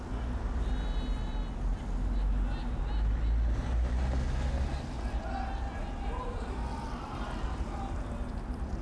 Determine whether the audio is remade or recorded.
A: recorded